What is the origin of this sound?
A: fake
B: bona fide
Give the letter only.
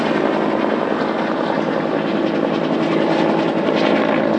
B